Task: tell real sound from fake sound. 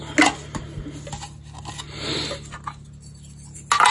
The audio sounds real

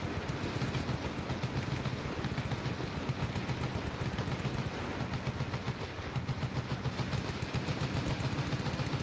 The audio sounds real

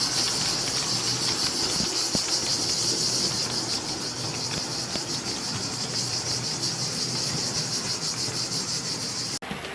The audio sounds real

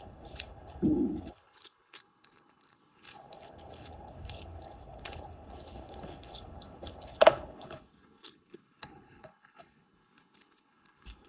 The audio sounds fake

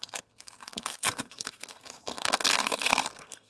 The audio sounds fake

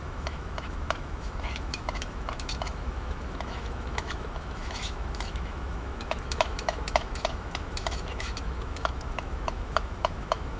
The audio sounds fake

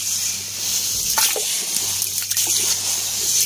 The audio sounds fake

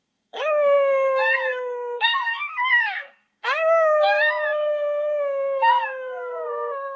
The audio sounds fake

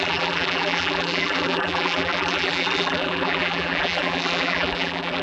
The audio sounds fake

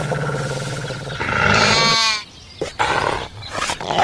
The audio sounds real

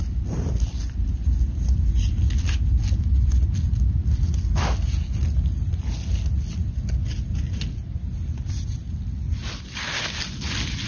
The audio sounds real